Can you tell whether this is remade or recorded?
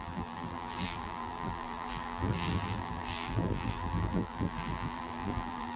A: remade